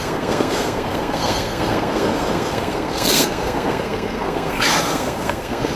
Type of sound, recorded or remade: remade